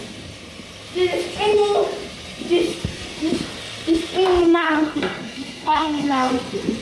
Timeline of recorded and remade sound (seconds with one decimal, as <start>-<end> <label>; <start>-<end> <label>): 0.0-4.4 recorded; 4.4-6.3 remade; 6.3-6.8 recorded